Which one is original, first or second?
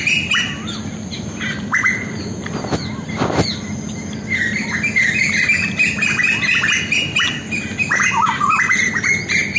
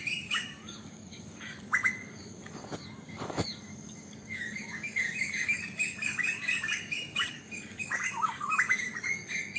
first